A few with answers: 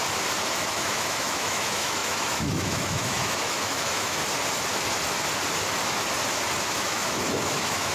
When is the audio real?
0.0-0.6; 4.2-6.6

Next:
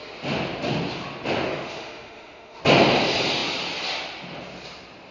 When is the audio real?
0.0-1.5; 2.6-5.1

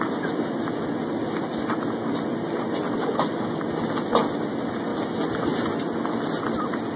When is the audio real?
0.0-3.0; 3.6-7.0

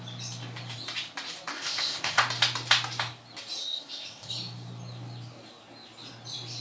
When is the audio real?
0.0-1.5; 2.2-3.6; 4.3-6.6

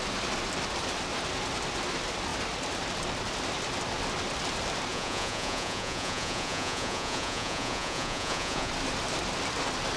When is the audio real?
0.0-4.9; 8.7-10.0